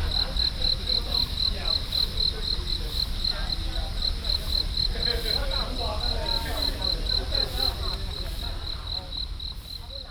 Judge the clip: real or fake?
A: real